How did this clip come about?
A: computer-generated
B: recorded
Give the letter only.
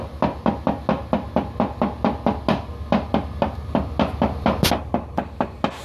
B